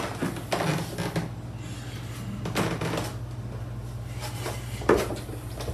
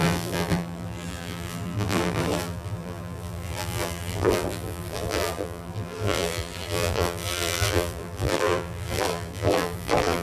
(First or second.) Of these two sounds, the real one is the first